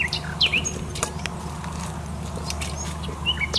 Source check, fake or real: real